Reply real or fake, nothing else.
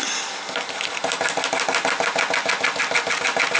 real